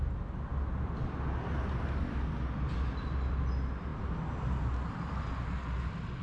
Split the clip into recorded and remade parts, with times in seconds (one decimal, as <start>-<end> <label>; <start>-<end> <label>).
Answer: 0.0-6.2 recorded